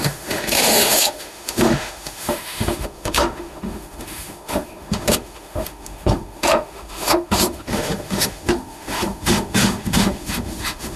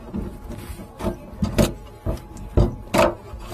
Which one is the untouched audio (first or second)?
second